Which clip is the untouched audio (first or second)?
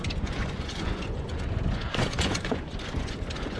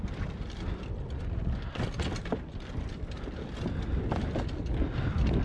second